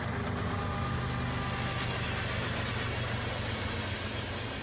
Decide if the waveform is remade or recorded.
recorded